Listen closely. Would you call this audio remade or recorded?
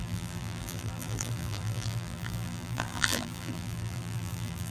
remade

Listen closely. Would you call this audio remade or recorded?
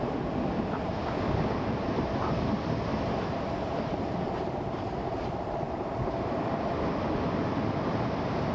recorded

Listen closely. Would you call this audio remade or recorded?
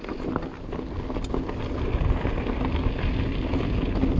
recorded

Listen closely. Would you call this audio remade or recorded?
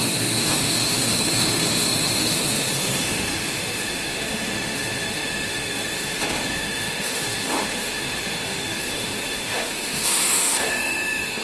remade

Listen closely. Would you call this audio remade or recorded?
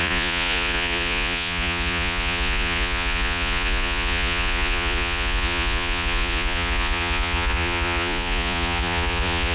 remade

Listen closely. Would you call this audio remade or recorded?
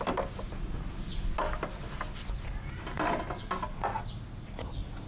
recorded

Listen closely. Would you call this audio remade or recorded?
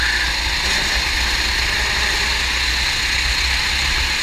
recorded